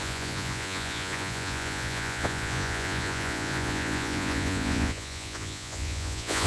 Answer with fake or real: fake